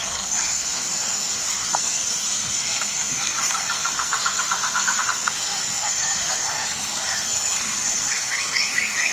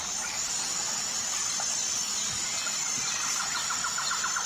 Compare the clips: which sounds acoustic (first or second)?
second